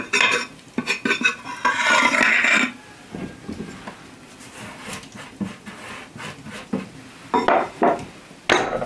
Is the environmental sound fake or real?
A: real